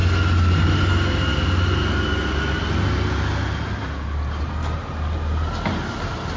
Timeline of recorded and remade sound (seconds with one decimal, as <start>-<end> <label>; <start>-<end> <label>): 0.0-6.4 recorded